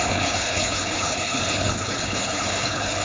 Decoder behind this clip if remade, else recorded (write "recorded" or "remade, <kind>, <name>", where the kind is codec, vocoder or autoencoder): remade, codec, HILCodec